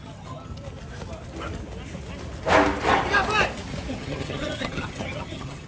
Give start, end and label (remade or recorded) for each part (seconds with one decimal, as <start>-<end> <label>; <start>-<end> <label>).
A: 0.0-0.5 remade; 0.5-3.9 recorded; 3.9-5.7 remade